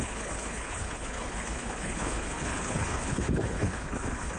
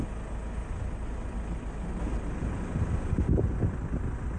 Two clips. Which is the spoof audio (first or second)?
first